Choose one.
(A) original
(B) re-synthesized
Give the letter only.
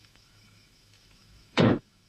B